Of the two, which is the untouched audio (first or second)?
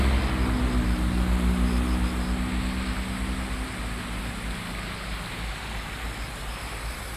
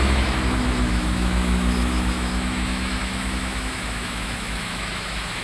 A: first